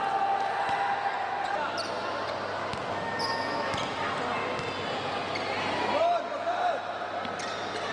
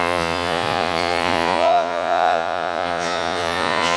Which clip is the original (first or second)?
first